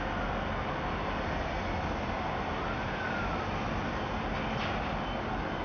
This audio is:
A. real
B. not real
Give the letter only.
A